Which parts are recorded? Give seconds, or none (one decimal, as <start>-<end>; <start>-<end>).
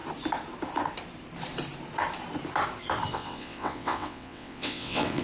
0.0-3.1